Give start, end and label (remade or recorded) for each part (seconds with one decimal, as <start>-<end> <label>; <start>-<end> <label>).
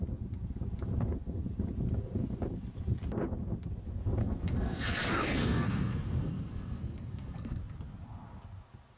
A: 0.0-4.2 recorded; 4.2-7.6 remade; 7.6-9.0 recorded